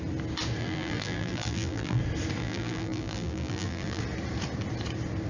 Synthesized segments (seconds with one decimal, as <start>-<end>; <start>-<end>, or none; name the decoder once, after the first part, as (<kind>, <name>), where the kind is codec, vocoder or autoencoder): 0.6-2.0 (vocoder, BigVGAN v2); 2.4-4.0